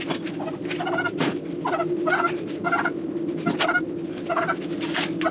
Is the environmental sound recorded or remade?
recorded